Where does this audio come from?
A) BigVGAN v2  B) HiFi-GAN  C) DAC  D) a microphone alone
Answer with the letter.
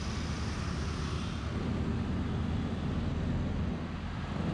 D